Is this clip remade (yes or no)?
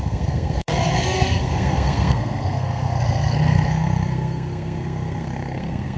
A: yes